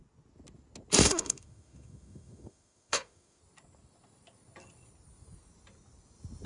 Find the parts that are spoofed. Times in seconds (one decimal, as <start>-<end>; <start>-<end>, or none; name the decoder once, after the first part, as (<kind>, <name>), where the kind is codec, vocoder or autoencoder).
1.0-3.4 (autoencoder, DAC-VAE)

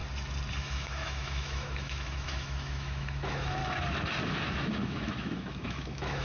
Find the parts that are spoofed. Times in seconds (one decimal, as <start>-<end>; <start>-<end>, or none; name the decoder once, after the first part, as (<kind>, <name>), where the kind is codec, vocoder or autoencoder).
0.6-3.6 (autoencoder, DAC-VAE); 4.5-6.2

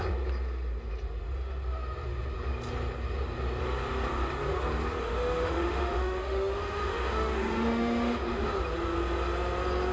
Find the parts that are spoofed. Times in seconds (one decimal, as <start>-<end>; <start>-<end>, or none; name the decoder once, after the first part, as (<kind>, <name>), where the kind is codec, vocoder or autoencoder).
5.0-8.6 (autoencoder, DAC-VAE)

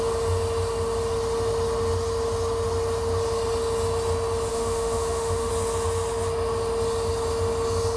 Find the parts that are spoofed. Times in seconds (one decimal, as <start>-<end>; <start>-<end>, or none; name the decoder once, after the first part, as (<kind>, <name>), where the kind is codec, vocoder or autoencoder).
4.5-5.5 (autoencoder, DAC-VAE)

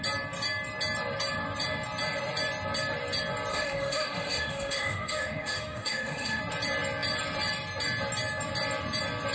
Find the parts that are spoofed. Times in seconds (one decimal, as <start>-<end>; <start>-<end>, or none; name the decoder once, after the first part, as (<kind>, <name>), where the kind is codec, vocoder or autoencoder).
3.5-6.4 (autoencoder, DAC-VAE)

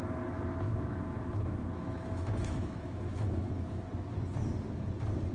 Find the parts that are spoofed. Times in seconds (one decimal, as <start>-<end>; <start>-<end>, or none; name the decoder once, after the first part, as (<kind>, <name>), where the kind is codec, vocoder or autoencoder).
0.7-3.9 (autoencoder, DAC-VAE)

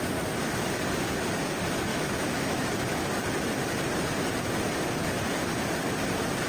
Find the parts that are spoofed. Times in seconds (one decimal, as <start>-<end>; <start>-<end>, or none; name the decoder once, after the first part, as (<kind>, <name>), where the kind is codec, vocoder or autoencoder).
1.9-2.6 (autoencoder, DAC-VAE)